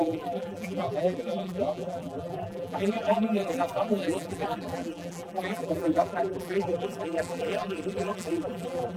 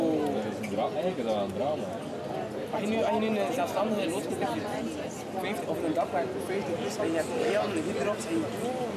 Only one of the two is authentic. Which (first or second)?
second